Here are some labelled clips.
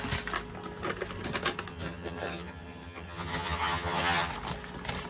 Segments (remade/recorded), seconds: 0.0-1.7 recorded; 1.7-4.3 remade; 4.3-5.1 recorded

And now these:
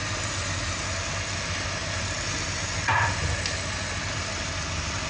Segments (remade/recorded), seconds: 0.0-5.1 recorded

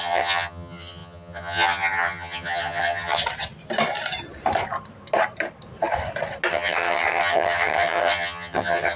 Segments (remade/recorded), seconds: 0.0-3.2 remade; 3.2-6.5 recorded; 6.5-9.0 remade

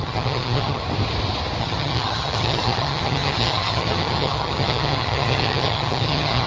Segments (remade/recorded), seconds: 0.0-0.8 remade; 0.8-1.6 recorded; 1.6-6.5 remade